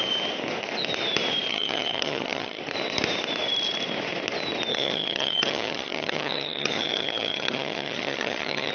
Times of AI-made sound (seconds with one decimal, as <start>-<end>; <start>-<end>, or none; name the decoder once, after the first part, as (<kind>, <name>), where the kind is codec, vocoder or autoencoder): 1.5-2.6 (vocoder, HiFi-GAN); 4.7-8.7